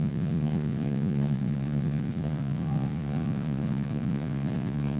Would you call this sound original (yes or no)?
no